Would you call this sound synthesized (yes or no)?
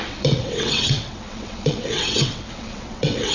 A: yes